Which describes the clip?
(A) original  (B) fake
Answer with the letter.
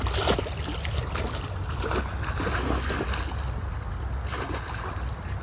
A